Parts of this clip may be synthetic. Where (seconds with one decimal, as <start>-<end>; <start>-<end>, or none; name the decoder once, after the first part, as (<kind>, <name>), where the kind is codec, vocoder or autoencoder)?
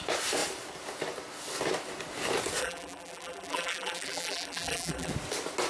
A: 2.6-5.1 (vocoder, BigVGAN v2)